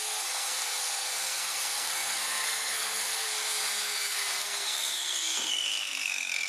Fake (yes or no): yes